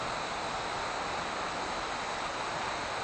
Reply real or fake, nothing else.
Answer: real